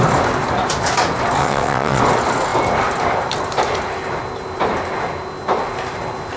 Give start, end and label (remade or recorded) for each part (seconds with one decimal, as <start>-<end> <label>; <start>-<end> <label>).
0.0-1.4 recorded; 1.4-2.0 remade; 2.0-6.4 recorded